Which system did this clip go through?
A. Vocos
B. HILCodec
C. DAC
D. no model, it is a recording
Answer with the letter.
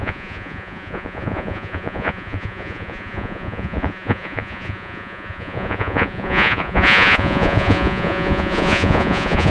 A